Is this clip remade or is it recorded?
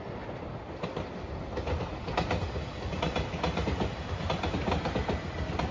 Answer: recorded